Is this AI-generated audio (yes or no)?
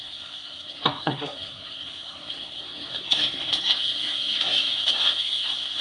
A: yes